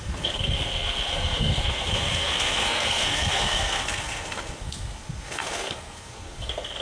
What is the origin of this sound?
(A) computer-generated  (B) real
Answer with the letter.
A